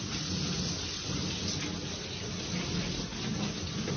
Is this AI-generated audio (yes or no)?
no